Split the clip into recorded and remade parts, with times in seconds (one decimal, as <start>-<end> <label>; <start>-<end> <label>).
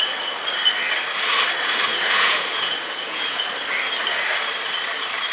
0.0-1.9 recorded; 1.9-3.4 remade; 3.4-5.3 recorded